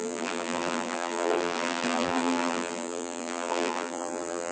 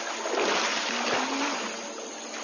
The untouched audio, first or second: second